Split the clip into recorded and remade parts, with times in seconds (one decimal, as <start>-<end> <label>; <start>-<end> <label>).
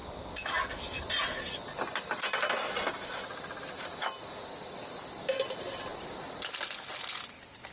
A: 0.0-7.7 recorded